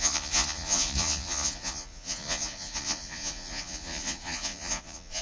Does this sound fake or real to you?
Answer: fake